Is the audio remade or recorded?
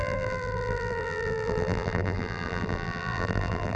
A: remade